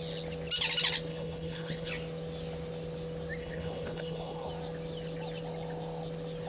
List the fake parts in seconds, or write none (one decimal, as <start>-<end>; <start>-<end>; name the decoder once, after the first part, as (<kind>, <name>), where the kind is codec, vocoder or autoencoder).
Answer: 1.1-1.9 (codec, HILCodec); 3.4-4.5